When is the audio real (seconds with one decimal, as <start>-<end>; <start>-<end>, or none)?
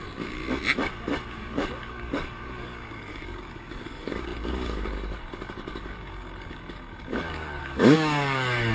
0.4-1.3